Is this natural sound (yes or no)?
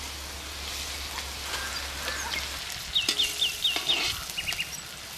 yes